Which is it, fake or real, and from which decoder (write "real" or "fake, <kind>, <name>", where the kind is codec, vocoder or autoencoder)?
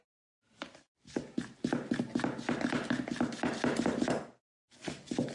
fake, vocoder, BigVGAN v2